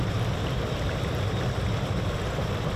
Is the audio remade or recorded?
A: recorded